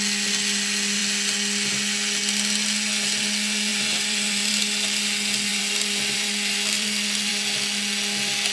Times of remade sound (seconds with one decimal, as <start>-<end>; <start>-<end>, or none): 3.7-4.5; 5.5-7.3

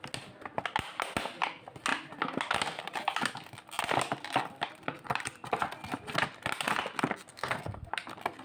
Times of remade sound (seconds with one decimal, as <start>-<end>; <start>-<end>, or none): 7.3-7.9